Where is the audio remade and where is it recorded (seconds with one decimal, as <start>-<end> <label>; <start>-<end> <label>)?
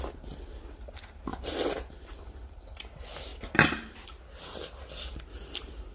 0.0-5.9 recorded